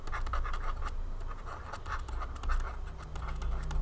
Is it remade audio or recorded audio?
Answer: recorded